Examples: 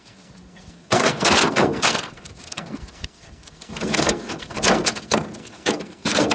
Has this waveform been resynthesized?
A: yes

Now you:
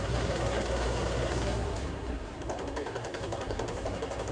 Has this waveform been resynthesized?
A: yes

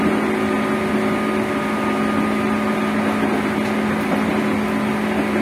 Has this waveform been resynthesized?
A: no